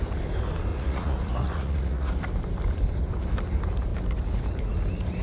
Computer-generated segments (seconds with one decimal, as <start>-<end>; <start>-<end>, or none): 0.7-2.1